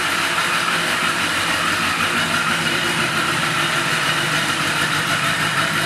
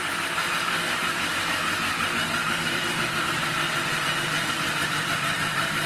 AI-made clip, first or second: first